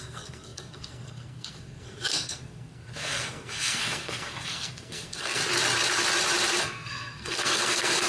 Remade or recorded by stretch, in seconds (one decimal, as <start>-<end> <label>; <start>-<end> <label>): 0.0-5.4 remade; 5.4-6.6 recorded; 6.6-8.1 remade